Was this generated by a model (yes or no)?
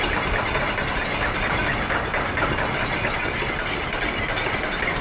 no